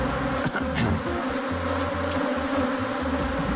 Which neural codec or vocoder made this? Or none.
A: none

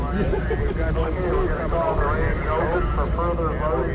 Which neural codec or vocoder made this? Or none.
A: none